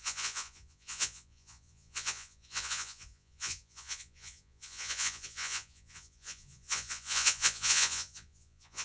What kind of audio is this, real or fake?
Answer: fake